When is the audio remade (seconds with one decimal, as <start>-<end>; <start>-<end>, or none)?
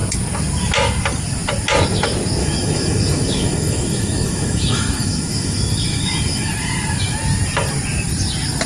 2.4-6.5